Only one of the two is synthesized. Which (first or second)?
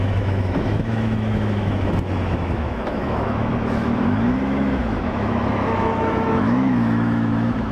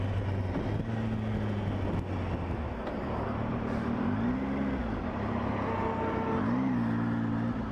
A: first